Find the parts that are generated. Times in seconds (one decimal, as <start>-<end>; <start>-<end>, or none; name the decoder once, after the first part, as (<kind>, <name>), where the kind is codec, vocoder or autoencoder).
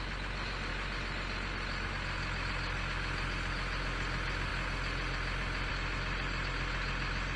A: none